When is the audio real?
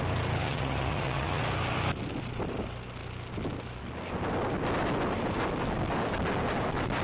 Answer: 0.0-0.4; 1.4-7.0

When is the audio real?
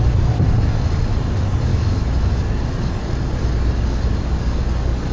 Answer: 0.0-1.7; 2.4-5.1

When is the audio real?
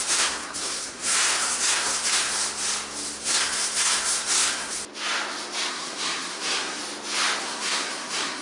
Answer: 2.3-3.2; 4.8-5.7; 6.8-7.4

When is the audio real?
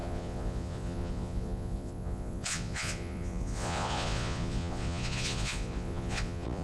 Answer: none